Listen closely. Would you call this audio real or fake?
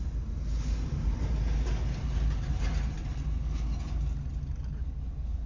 real